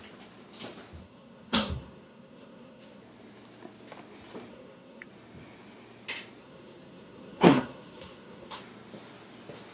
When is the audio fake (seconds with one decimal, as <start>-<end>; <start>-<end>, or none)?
1.0-3.0; 4.5-5.1; 6.4-8.6